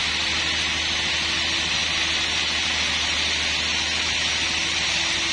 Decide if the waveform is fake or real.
real